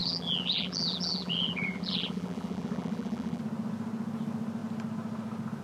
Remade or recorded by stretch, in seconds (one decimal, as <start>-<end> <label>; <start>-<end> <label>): 0.0-3.4 remade; 3.4-5.6 recorded